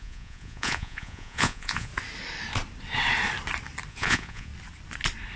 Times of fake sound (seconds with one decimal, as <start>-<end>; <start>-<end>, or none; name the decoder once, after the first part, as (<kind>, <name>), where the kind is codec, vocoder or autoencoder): 0.0-1.9 (vocoder, Vocos); 3.9-4.5